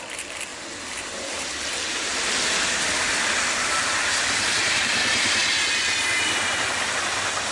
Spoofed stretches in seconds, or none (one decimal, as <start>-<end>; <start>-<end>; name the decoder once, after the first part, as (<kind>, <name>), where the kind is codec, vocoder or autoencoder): 0.0-0.5 (vocoder, BigVGAN v2); 2.3-7.5